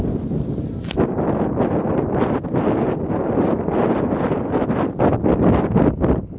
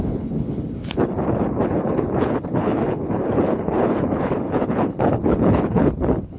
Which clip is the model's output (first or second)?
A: second